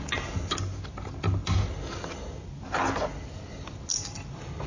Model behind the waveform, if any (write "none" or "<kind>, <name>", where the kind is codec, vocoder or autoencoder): none